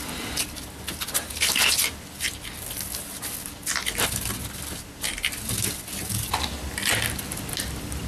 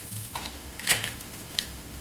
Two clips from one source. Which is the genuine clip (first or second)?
first